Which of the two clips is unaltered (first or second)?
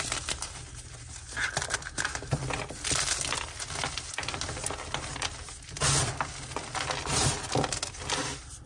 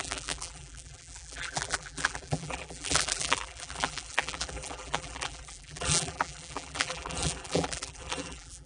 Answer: first